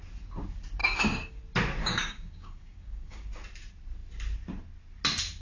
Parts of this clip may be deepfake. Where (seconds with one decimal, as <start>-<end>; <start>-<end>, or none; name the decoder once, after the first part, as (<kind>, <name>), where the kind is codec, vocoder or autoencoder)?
0.8-1.4 (codec, DAC); 1.8-3.3